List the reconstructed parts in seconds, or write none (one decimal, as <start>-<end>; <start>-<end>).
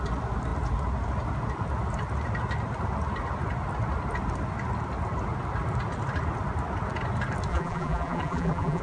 7.5-8.8